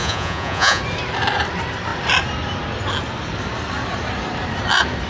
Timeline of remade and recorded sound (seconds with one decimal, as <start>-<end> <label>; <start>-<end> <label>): 0.0-0.8 remade; 0.8-5.1 recorded